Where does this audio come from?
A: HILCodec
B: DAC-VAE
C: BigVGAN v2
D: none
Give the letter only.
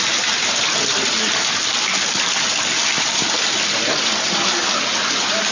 D